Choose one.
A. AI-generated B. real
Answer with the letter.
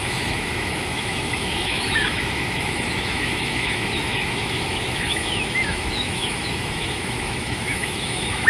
A